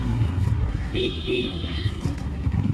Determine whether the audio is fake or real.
fake